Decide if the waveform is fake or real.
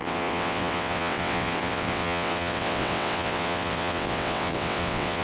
fake